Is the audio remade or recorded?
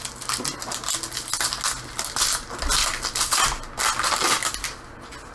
recorded